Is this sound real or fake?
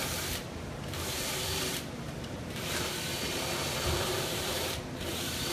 fake